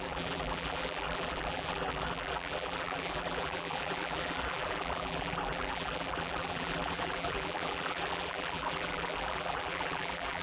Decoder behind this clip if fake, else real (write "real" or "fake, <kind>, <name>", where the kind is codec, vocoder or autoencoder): fake, vocoder, BigVGAN v2